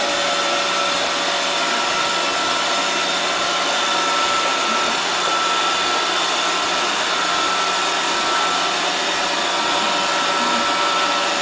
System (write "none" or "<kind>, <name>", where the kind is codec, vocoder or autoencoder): none